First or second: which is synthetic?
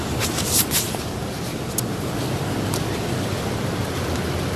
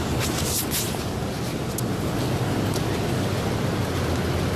first